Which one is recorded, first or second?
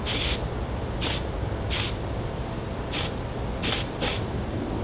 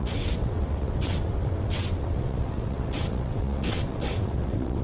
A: first